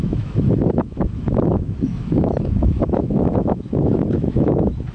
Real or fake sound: fake